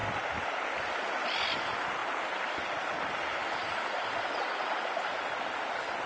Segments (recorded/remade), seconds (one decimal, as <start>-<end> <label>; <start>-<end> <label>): 0.0-6.1 recorded